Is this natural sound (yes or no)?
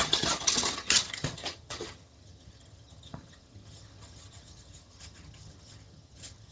no